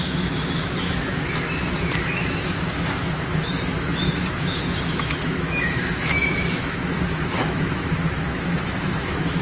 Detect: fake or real fake